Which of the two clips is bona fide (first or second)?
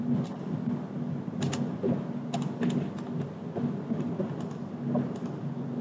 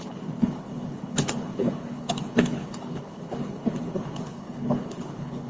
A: first